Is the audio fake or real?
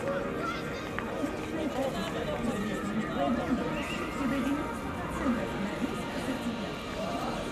real